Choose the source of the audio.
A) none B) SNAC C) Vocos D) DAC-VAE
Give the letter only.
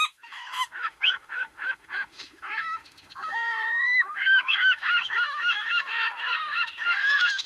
D